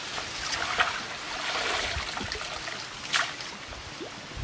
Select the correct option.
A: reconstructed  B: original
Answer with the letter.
B